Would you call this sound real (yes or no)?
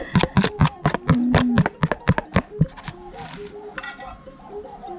yes